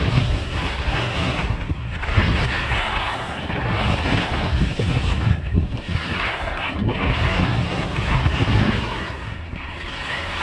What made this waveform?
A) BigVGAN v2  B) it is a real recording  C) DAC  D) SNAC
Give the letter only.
D